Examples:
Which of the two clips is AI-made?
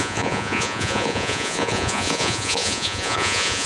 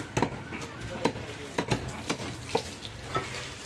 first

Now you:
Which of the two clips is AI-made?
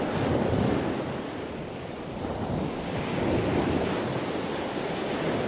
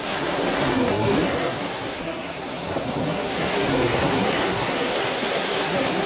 second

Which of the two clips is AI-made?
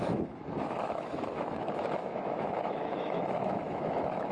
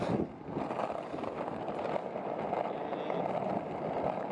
first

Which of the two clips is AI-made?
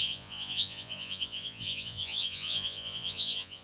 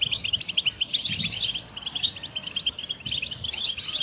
first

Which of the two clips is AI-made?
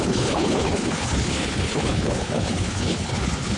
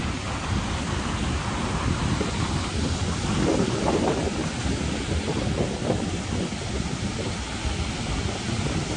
first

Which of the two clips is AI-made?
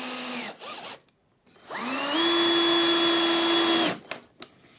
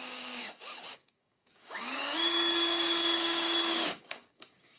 second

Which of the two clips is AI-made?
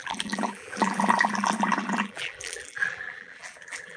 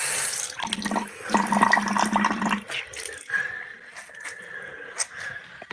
first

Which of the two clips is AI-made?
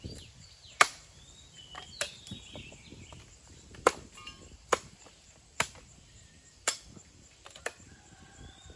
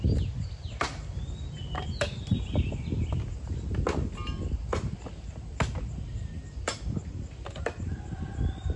first